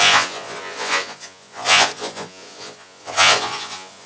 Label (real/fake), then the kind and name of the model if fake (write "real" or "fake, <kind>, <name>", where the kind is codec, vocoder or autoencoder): fake, vocoder, Vocos